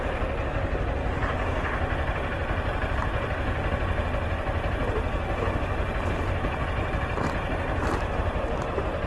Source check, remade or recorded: recorded